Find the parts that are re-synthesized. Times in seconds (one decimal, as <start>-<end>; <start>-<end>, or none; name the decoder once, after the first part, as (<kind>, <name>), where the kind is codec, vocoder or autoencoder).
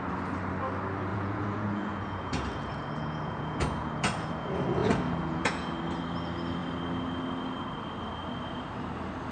1.1-4.3 (vocoder, Vocos); 4.8-5.8